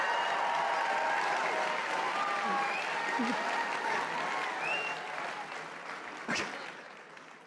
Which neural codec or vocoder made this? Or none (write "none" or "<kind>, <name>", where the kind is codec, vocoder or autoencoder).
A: none